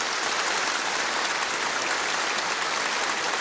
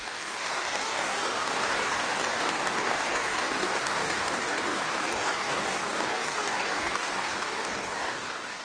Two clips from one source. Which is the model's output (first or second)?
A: second